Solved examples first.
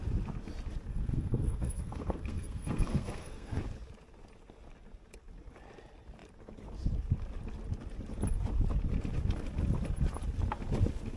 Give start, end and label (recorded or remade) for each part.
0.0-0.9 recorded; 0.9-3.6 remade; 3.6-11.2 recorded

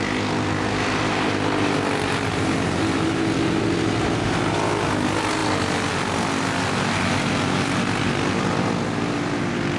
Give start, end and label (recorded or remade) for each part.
0.0-9.8 recorded

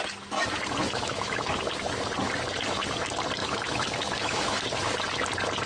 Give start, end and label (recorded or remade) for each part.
0.0-0.8 recorded; 0.8-1.5 remade; 1.5-3.4 recorded; 3.4-4.6 remade; 4.6-5.7 recorded